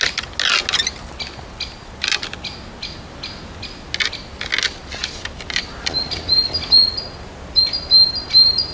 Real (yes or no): yes